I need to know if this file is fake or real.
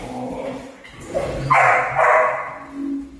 real